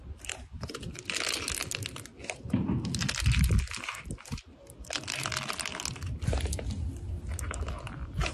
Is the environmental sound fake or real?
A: real